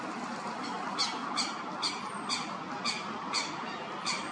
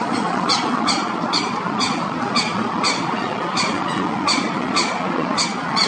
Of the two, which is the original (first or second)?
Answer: first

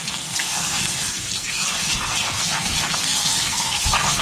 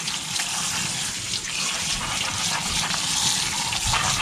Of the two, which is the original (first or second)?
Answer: second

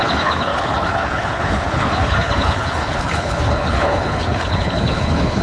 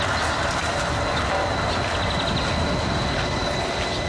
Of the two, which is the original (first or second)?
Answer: second